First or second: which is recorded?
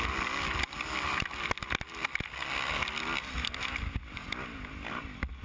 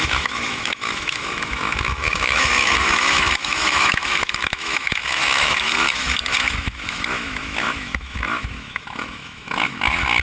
first